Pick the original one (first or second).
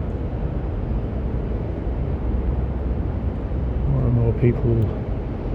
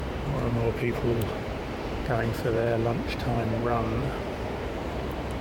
first